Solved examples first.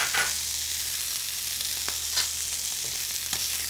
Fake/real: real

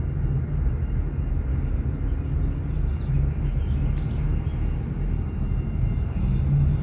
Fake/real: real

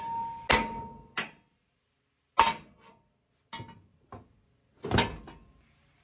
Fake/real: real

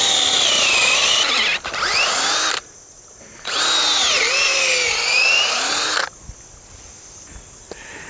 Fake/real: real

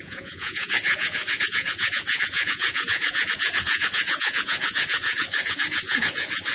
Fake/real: fake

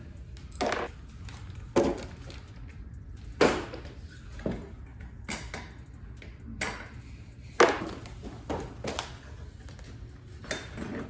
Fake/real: real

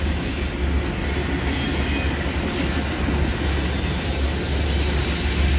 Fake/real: real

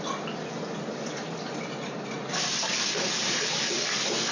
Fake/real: real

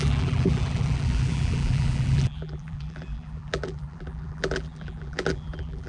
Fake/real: fake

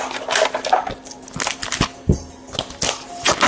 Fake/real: fake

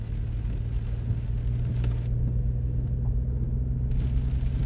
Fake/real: real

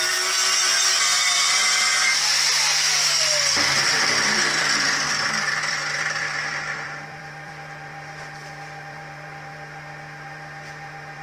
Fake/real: fake